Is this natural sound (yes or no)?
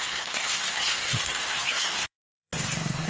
no